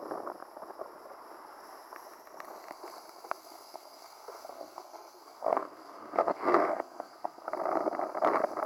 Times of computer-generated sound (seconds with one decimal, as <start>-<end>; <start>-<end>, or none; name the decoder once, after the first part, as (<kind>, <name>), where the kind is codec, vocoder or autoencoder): 3.4-7.5 (codec, SNAC)